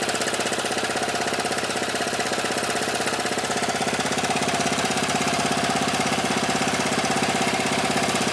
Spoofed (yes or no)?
no